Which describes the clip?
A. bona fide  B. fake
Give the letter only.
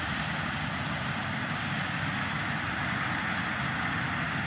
A